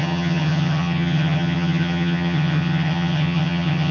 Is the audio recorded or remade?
remade